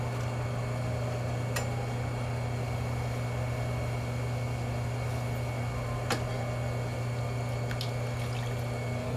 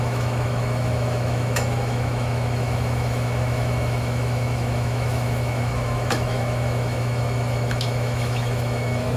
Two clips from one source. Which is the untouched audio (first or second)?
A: first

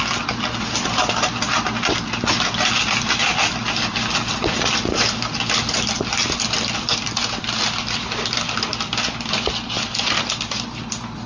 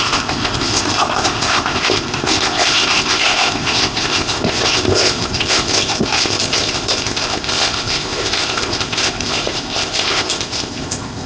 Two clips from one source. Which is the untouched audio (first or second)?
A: first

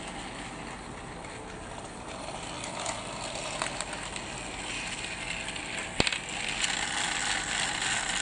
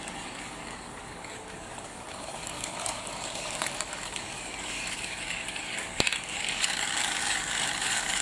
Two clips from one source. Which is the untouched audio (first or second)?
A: first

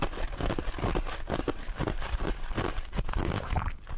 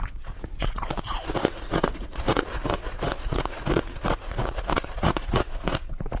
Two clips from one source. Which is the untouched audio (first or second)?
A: first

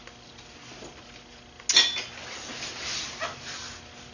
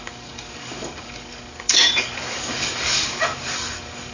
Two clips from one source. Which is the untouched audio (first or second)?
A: first